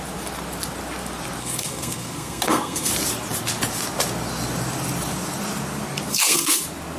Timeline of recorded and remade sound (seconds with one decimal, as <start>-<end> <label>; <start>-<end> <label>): 0.0-1.4 recorded; 1.4-2.9 remade; 2.9-6.1 recorded; 6.1-6.6 remade; 6.6-7.0 recorded